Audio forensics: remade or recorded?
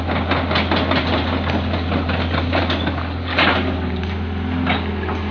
recorded